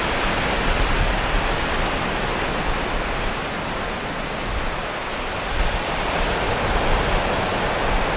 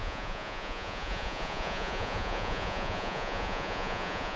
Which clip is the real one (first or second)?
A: first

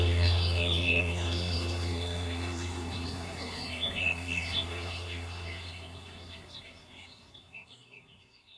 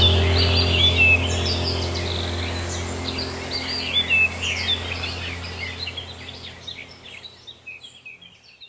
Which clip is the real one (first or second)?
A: second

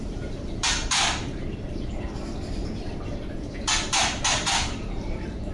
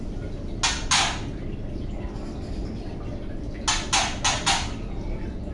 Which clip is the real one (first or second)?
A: second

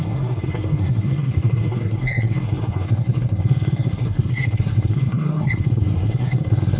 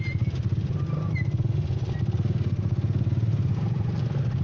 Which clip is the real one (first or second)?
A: second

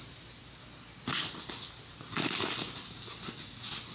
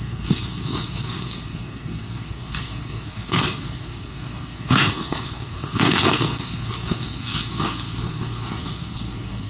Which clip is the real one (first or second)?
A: first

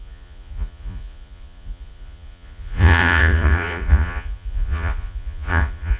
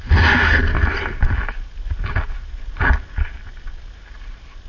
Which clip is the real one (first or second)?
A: second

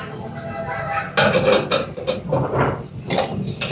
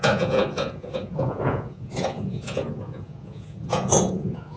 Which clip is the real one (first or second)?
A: first